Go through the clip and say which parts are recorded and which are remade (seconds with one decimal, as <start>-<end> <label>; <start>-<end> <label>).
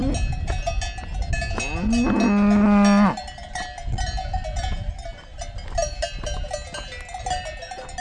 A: 0.0-8.0 recorded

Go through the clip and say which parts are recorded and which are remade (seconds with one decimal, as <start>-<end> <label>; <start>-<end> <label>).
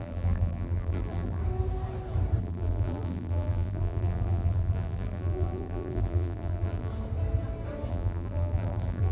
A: 0.0-1.4 remade; 1.4-2.4 recorded; 2.4-6.9 remade; 6.9-7.9 recorded; 7.9-9.1 remade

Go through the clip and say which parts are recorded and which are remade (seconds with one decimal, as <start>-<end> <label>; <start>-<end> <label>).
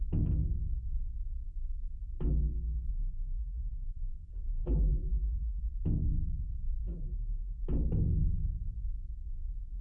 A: 0.0-2.9 recorded; 2.9-4.1 remade; 4.1-4.5 recorded; 4.5-5.6 remade; 5.6-6.8 recorded; 6.8-7.6 remade; 7.6-9.8 recorded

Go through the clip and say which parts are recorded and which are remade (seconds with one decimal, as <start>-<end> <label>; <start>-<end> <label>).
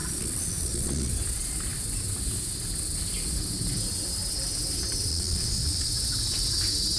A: 0.0-1.1 remade; 1.1-5.1 recorded; 5.1-5.9 remade; 5.9-7.0 recorded